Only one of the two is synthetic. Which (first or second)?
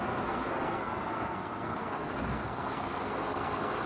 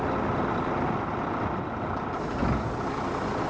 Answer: first